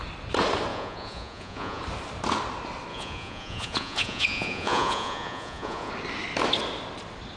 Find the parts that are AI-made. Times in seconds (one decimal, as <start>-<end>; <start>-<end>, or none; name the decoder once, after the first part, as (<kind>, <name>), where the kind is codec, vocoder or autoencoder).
0.7-1.8 (vocoder, Vocos); 2.9-5.9